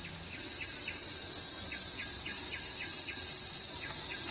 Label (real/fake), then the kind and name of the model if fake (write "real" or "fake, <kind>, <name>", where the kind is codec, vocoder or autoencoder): real